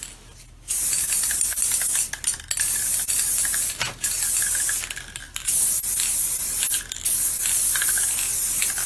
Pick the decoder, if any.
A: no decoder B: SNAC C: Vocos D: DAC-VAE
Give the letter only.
A